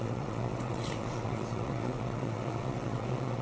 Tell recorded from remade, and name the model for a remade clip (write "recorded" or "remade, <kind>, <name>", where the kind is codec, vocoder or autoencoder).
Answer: remade, vocoder, WaveNeXt